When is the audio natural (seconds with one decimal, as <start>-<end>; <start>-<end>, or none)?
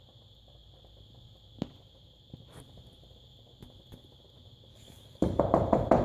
0.0-4.7; 5.4-6.0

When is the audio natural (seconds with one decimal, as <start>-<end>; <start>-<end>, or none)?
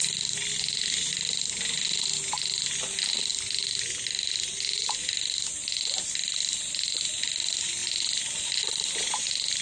0.0-9.6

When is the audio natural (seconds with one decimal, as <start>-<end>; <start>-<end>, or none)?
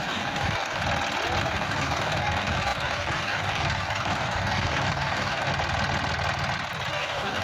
0.8-1.4; 5.5-6.9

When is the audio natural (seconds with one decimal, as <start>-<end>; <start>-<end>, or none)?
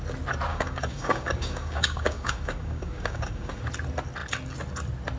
0.0-0.5; 3.6-5.2